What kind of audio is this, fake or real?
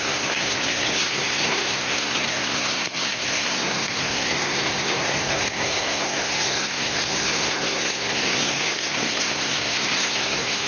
fake